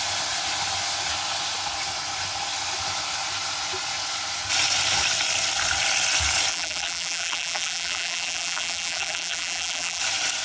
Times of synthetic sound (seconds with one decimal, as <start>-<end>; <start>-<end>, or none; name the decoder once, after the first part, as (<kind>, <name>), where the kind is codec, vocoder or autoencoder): 6.5-10.0 (vocoder, BigVGAN v2)